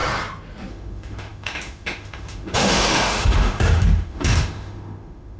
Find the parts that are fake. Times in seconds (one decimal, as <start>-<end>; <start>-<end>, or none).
0.7-5.4